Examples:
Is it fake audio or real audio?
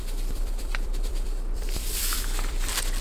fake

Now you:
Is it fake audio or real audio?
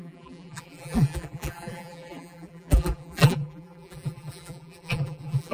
fake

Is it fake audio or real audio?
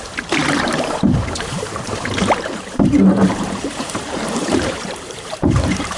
fake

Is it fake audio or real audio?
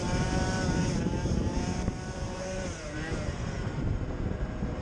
fake